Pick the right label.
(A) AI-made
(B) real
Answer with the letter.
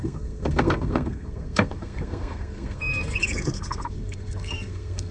A